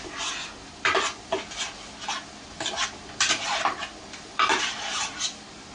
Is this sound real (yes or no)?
yes